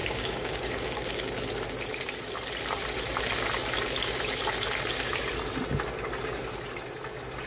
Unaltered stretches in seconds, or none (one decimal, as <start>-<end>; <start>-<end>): 1.3-7.5